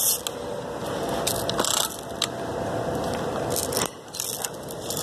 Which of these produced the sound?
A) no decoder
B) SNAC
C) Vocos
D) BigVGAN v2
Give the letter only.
A